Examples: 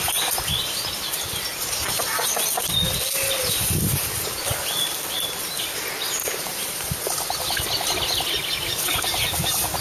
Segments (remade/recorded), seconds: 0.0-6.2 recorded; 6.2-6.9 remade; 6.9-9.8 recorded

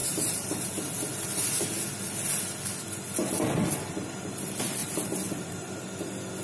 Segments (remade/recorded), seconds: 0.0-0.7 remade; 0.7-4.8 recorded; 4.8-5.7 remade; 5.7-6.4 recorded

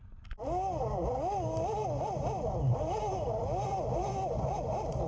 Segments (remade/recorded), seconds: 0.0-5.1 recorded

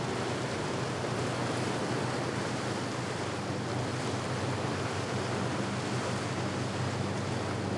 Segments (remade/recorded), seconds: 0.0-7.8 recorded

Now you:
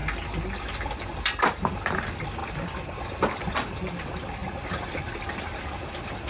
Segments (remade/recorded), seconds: 0.0-0.6 recorded; 0.6-4.4 remade; 4.4-5.1 recorded; 5.1-6.3 remade